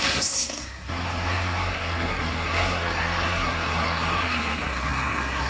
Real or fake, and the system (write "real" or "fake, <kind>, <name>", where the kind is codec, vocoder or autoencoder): fake, codec, SNAC